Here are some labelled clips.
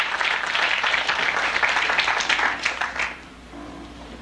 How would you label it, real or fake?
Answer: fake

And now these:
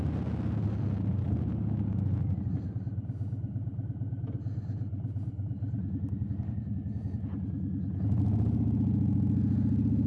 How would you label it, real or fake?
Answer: real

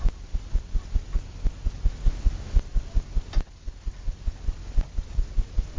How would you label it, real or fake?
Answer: real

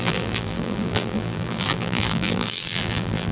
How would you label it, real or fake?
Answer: fake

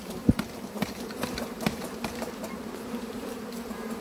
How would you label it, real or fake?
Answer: fake